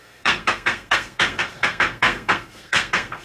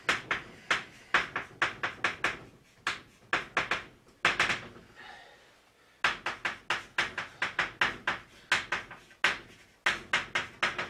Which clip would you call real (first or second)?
second